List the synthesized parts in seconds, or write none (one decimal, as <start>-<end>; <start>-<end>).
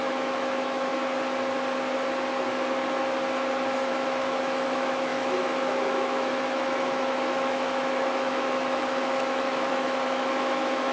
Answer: 0.0-0.9; 3.9-10.9